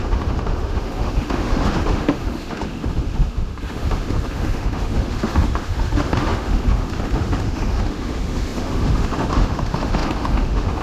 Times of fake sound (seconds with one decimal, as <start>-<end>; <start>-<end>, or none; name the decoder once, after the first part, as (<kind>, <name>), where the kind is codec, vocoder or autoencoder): 0.0-10.8 (autoencoder, DAC-VAE)